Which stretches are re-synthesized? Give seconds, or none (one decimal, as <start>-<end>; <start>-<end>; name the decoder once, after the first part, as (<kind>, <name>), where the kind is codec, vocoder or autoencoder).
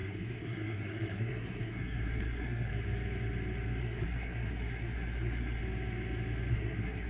0.0-2.7 (codec, SNAC); 3.8-5.6; 6.5-7.1